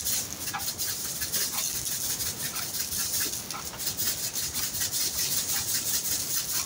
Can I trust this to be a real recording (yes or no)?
yes